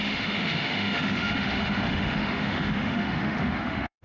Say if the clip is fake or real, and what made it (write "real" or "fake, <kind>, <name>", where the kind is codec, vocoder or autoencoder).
fake, autoencoder, DAC-VAE